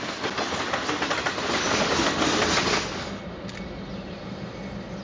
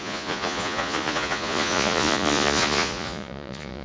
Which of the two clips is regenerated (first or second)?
second